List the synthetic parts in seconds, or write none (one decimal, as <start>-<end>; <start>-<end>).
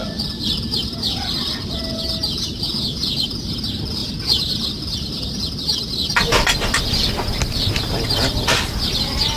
none